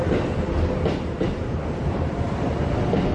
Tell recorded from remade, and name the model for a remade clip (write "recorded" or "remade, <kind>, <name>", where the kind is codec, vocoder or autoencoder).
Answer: remade, vocoder, BigVGAN v2